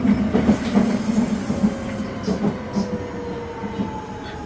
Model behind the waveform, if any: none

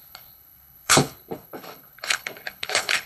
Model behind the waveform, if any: codec, HILCodec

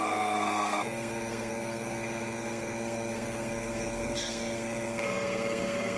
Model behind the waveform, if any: codec, SNAC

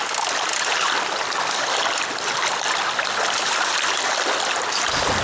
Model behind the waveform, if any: none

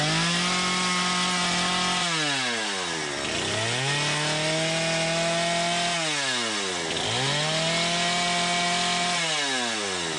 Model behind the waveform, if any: none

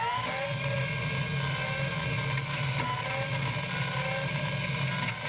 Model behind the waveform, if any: none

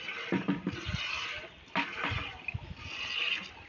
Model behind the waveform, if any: none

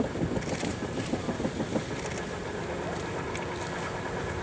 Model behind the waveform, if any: none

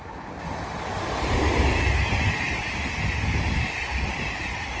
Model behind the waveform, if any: none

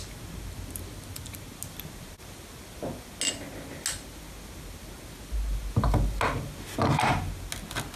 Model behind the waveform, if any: none